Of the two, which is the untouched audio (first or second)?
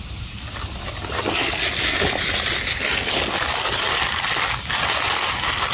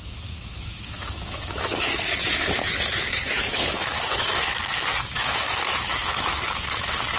first